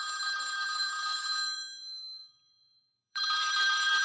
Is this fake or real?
fake